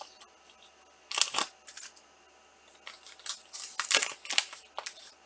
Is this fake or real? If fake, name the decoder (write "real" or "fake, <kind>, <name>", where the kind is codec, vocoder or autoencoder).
real